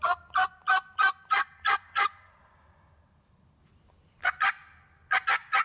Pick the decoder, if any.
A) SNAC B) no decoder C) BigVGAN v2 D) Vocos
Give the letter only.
B